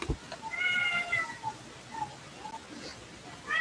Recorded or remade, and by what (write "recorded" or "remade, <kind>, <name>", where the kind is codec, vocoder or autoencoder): recorded